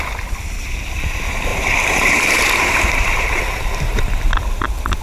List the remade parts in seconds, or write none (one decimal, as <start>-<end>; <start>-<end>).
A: 1.5-3.4